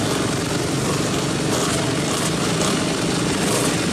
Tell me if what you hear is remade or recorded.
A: recorded